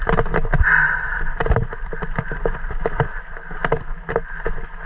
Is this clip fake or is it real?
real